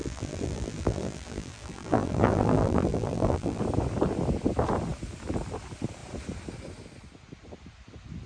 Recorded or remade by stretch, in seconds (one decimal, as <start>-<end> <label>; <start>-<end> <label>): 0.0-3.6 remade; 3.6-8.3 recorded